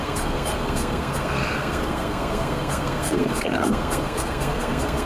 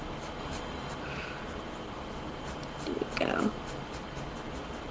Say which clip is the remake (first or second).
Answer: first